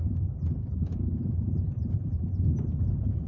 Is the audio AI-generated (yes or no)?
yes